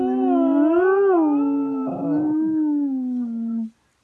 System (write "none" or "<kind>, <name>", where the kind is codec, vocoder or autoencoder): none